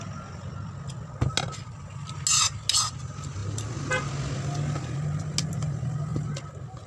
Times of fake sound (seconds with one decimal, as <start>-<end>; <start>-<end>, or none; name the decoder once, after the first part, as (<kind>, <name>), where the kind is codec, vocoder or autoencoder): none